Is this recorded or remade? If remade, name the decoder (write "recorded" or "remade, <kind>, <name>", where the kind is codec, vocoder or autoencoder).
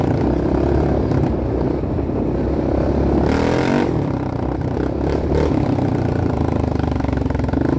remade, vocoder, BigVGAN v2